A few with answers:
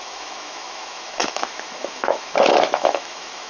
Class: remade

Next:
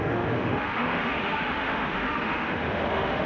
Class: remade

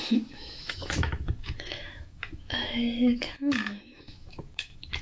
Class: remade